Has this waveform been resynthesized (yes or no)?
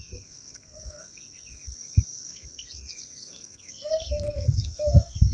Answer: yes